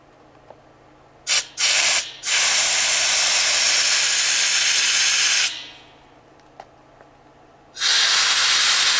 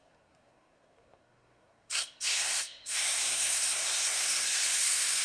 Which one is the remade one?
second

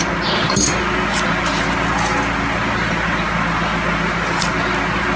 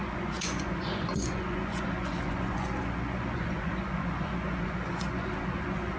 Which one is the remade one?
second